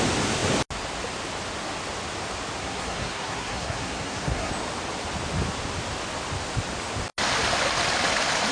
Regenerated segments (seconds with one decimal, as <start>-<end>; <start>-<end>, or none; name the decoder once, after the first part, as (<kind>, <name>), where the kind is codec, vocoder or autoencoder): 2.6-4.5 (codec, SNAC)